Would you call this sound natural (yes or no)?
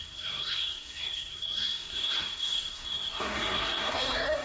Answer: no